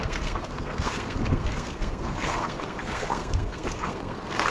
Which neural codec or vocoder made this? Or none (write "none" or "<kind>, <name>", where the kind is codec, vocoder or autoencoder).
codec, SNAC